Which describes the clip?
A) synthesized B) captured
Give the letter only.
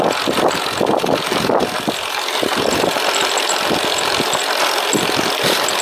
B